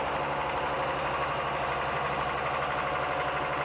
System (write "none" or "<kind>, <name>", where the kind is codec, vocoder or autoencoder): none